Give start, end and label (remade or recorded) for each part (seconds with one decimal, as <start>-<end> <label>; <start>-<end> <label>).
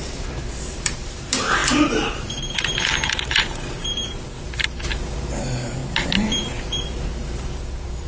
0.0-5.8 remade; 5.8-6.6 recorded; 6.6-8.1 remade